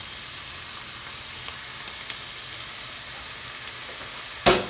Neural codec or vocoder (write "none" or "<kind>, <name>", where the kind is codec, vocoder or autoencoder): none